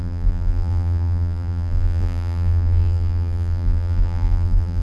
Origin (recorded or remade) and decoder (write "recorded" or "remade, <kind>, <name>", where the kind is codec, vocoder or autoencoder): remade, vocoder, BigVGAN v2